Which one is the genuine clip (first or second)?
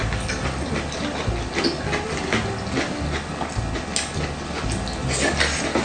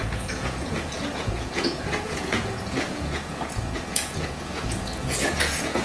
first